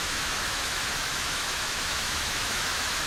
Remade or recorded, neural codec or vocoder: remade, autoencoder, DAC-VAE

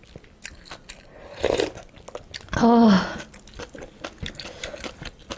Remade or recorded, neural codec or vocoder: recorded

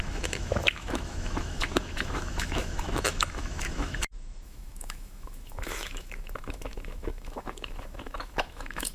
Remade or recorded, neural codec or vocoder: remade, autoencoder, DAC-VAE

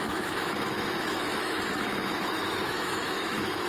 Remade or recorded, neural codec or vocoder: remade, autoencoder, DAC-VAE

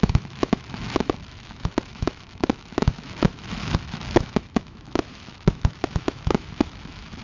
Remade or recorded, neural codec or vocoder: remade, autoencoder, DAC-VAE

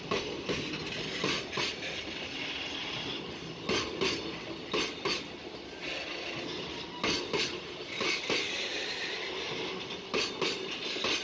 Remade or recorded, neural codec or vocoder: recorded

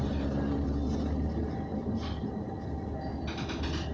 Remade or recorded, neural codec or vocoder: recorded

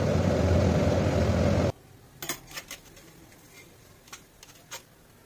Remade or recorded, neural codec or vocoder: recorded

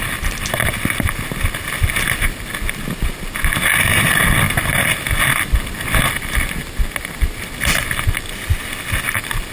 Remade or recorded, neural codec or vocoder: recorded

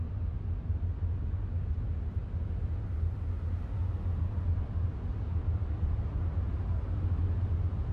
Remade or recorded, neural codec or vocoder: recorded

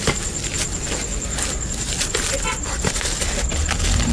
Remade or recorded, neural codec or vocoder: recorded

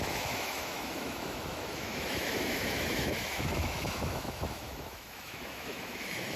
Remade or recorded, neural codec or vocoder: remade, autoencoder, DAC-VAE